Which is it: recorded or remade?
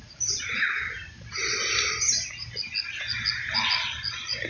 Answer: recorded